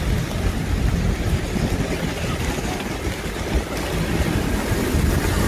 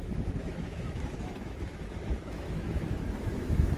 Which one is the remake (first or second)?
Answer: second